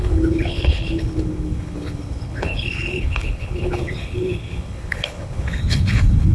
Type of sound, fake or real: fake